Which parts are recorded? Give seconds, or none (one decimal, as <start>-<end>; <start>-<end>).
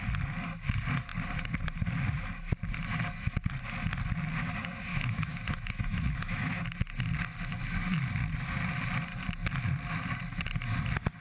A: 0.0-4.9; 6.6-11.2